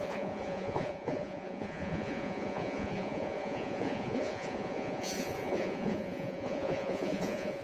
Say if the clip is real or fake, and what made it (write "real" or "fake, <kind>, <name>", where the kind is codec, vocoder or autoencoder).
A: fake, vocoder, Vocos